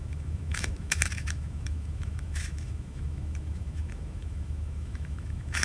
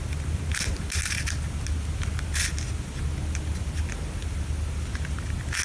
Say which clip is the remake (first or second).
first